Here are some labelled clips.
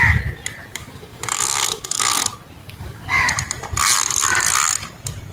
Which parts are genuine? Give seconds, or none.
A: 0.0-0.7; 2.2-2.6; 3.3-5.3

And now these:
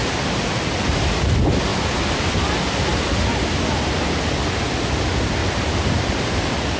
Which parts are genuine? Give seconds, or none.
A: 0.0-1.7; 2.3-5.4; 6.1-6.8

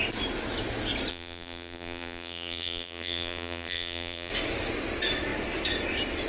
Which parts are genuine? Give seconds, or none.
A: 0.0-1.1; 4.3-6.3

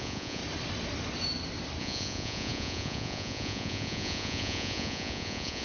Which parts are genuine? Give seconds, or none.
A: 0.4-1.8

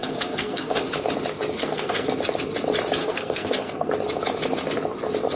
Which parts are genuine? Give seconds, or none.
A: 0.8-1.6; 2.1-3.0; 3.9-5.4